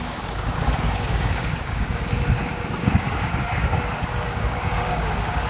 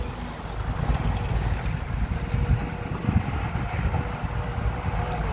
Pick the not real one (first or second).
first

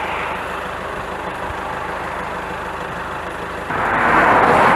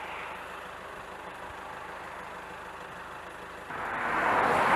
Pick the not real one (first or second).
first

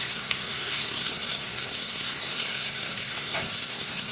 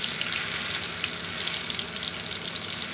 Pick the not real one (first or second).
first